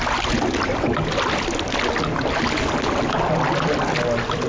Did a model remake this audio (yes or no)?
no